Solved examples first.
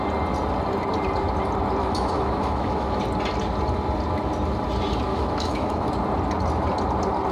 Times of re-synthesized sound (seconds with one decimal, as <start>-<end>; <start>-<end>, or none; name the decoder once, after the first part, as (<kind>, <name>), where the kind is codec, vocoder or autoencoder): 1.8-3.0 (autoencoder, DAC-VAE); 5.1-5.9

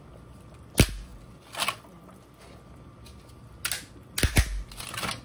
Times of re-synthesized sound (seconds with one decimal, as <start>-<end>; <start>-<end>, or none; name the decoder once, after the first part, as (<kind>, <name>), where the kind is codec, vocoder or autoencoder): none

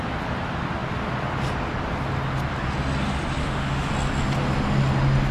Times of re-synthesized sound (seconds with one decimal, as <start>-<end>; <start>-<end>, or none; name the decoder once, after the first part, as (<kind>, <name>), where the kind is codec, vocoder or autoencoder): 3.4-3.9 (autoencoder, DAC-VAE)

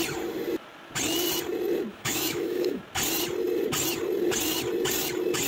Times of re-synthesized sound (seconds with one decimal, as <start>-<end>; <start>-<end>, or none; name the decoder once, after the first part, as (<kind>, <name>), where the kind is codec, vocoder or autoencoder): 1.9-2.8 (autoencoder, DAC-VAE)

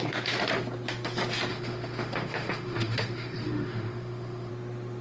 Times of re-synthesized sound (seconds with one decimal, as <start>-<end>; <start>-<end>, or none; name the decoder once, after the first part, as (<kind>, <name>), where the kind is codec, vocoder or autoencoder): 1.5-4.5 (autoencoder, DAC-VAE)